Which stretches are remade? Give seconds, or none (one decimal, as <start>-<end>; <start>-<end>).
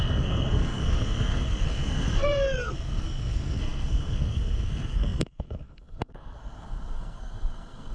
0.0-7.9